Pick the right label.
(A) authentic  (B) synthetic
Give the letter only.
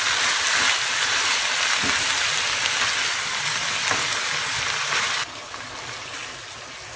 A